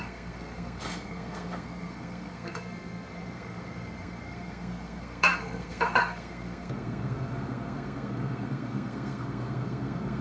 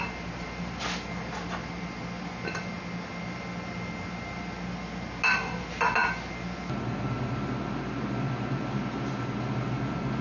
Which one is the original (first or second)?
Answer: second